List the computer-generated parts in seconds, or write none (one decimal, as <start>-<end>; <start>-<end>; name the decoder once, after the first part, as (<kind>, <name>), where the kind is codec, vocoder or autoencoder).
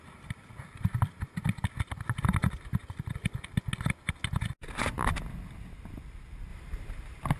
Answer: 6.5-7.4 (vocoder, BigVGAN v2)